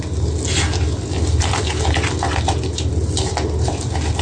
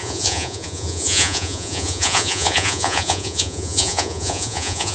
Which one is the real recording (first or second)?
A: first